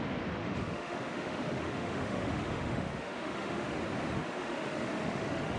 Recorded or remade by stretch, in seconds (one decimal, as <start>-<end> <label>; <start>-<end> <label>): 0.0-0.4 recorded; 0.4-3.8 remade; 3.8-4.4 recorded; 4.4-5.6 remade